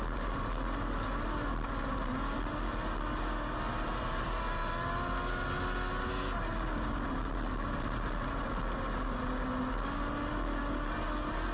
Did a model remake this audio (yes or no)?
no